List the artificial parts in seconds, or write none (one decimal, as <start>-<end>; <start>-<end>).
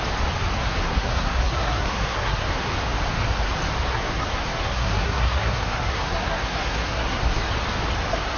0.7-2.7; 3.9-7.4